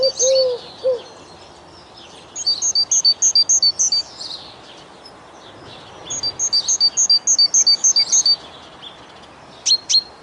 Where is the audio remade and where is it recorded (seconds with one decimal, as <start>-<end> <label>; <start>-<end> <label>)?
0.0-10.2 recorded